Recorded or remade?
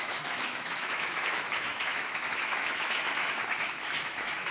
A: remade